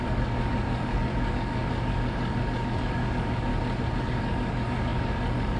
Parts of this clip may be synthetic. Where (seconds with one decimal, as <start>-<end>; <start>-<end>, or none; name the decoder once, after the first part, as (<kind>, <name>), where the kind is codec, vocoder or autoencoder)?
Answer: 0.0-3.5 (codec, DAC); 4.0-5.6